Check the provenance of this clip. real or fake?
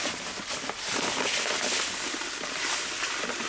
fake